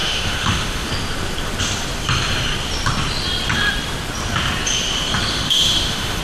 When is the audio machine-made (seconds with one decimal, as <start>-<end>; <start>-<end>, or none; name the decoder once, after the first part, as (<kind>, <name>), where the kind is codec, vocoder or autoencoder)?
0.0-0.9 (autoencoder, DAC-VAE); 5.3-6.2